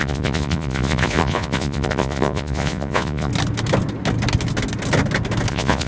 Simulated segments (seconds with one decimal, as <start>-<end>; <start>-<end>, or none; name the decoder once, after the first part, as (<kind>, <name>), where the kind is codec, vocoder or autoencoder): 0.0-3.3 (vocoder, Vocos); 5.5-5.9

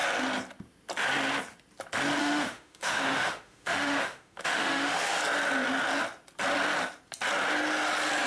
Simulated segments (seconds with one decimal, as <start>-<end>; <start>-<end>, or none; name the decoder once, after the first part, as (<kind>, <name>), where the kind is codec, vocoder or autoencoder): 2.2-5.2 (autoencoder, DAC-VAE)

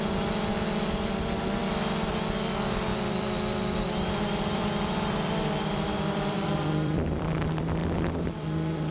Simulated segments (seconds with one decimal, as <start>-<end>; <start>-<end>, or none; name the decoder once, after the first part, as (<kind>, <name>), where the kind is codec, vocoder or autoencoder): 2.9-7.3 (vocoder, BigVGAN v2)

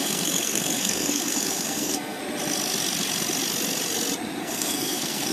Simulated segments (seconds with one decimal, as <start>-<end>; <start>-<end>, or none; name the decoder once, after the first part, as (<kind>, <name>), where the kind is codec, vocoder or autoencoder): 0.0-2.2 (codec, SNAC); 4.4-5.3

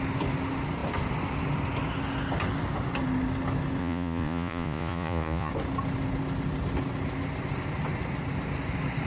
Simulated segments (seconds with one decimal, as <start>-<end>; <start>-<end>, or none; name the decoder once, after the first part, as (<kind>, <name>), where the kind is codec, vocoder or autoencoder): 3.8-5.5 (vocoder, Vocos)